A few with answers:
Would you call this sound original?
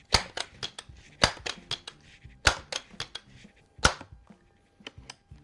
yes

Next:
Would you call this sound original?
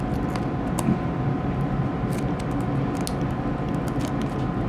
yes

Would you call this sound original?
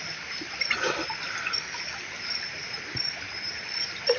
yes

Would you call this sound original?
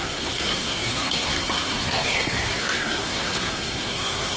no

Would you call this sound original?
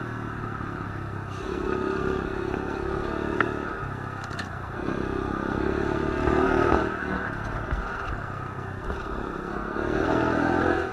no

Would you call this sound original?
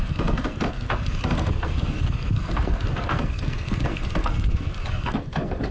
no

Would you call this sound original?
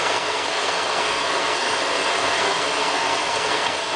no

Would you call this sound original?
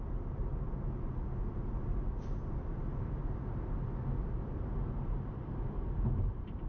yes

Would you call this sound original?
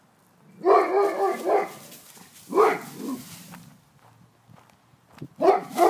yes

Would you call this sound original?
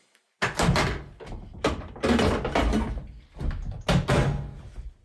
yes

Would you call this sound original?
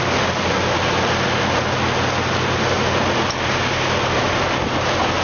yes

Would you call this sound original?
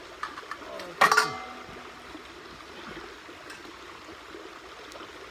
yes